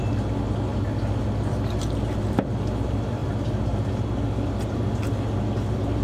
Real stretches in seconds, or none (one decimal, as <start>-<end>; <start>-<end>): 0.0-6.0